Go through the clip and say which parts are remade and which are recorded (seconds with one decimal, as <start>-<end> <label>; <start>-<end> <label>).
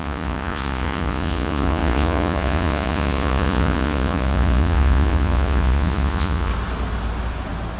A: 0.0-6.5 remade; 6.5-7.8 recorded